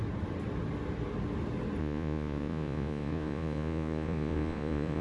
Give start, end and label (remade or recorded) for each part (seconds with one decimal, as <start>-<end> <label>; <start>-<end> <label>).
0.0-1.8 recorded; 1.8-5.0 remade